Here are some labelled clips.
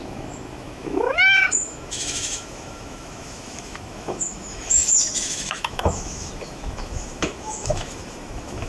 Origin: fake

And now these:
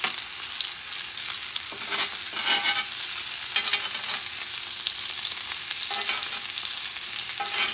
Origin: real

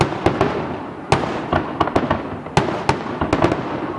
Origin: real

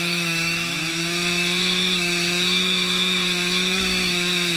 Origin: fake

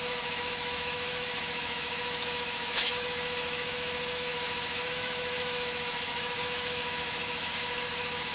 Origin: fake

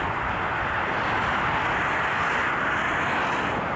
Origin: real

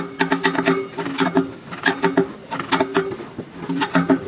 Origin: real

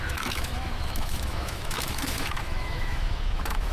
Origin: fake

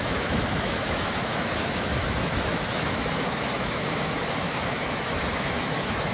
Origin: fake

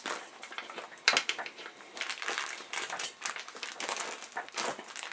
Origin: real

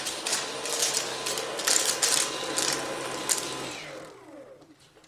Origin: real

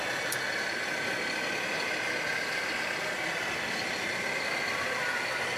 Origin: real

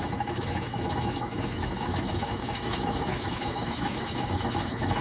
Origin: fake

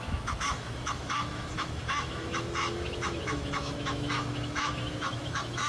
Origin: fake